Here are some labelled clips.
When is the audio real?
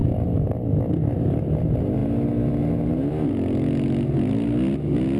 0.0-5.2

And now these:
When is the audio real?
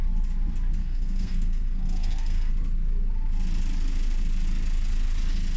0.0-0.8; 2.5-5.6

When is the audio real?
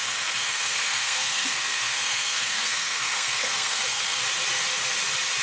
4.2-5.4